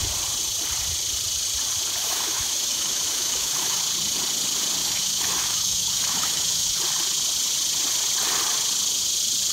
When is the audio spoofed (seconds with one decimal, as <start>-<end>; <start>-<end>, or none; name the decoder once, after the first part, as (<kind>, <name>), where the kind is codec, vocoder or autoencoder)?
2.0-3.8 (autoencoder, DAC-VAE); 4.8-6.8